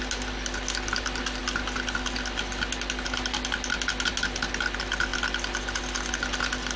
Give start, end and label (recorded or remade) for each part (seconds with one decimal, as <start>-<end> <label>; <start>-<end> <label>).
0.0-6.8 recorded